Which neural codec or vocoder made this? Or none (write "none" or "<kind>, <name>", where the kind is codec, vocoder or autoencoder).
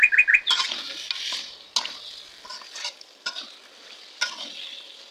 none